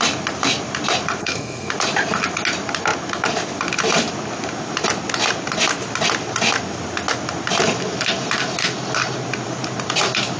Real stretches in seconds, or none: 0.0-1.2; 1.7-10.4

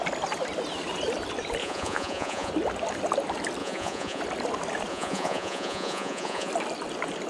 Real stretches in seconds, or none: 0.0-1.6; 2.5-3.6; 4.2-4.9; 6.5-7.3

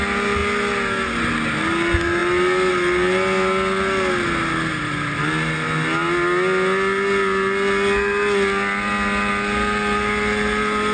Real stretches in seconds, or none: 0.0-10.9

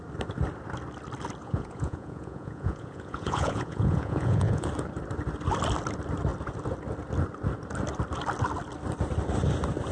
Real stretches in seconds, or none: 0.0-1.4; 4.7-9.9

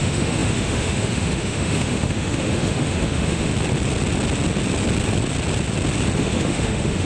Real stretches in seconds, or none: 3.5-6.2